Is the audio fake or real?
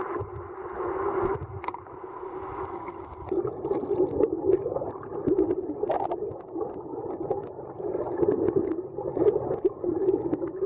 real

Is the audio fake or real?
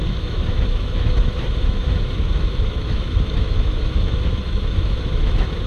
fake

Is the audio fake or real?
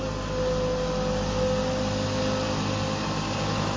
real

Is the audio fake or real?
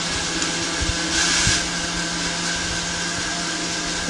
real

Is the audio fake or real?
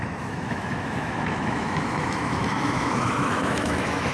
fake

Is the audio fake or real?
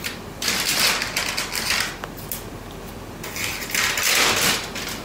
real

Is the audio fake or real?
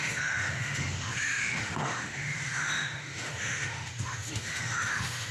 fake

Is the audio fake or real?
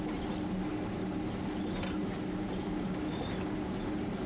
real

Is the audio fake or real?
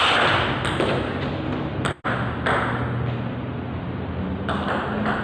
real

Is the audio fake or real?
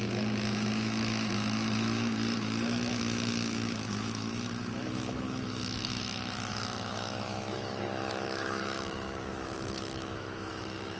fake